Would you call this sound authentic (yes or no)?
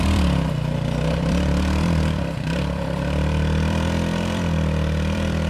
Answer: no